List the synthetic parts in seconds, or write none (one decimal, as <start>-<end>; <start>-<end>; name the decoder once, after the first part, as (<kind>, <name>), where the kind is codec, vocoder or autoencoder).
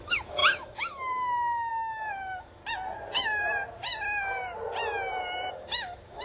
0.0-2.6 (autoencoder, DAC-VAE); 5.5-6.2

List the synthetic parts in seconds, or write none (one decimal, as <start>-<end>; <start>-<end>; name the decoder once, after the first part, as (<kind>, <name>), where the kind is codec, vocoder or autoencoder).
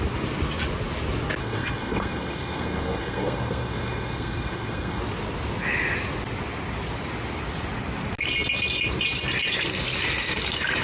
1.4-5.0 (codec, SNAC)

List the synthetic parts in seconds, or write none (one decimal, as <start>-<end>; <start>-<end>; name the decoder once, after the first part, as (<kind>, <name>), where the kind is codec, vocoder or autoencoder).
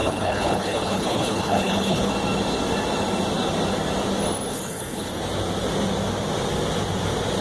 0.0-2.1 (codec, HILCodec); 4.5-5.1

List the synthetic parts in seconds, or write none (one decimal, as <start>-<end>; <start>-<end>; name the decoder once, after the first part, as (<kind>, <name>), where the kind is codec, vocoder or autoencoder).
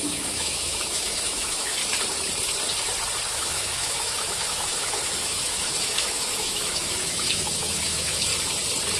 0.0-1.8 (autoencoder, DAC-VAE); 3.3-8.3